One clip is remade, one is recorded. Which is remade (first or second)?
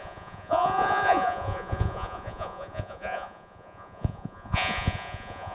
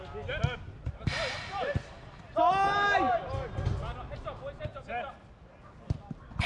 first